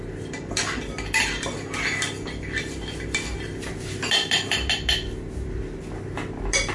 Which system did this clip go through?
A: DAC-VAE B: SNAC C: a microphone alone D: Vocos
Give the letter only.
C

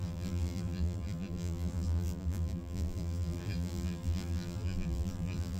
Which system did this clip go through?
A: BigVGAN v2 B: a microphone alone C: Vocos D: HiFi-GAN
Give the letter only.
A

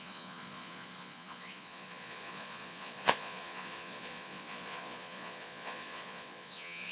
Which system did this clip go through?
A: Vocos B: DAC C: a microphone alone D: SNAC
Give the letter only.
A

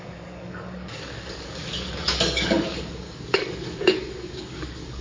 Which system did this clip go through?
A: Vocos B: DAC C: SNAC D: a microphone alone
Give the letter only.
B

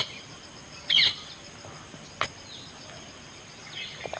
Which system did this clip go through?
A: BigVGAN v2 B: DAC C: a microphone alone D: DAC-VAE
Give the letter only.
C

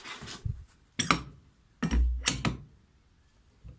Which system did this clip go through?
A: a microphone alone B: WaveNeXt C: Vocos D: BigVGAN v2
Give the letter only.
A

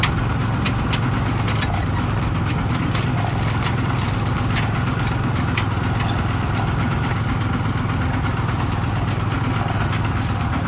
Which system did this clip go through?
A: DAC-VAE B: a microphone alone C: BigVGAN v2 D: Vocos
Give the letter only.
B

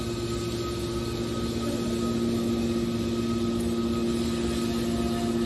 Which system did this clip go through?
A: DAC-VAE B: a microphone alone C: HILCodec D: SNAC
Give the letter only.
B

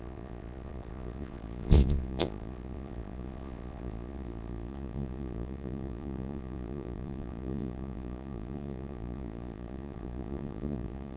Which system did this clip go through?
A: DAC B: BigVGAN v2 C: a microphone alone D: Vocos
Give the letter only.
D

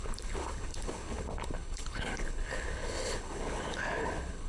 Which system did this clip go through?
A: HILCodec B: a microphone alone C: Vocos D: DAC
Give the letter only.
A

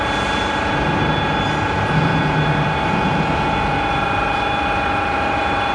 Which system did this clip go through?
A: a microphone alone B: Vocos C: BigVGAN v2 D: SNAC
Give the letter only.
A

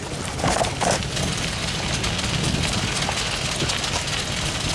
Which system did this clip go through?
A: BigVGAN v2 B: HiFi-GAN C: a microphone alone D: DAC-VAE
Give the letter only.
C